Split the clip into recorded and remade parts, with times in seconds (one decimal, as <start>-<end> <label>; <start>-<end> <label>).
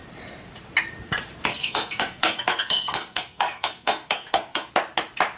0.0-1.5 recorded; 1.5-4.7 remade; 4.7-5.4 recorded